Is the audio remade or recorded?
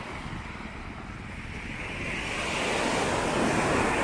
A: recorded